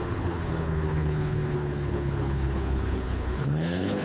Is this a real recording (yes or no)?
no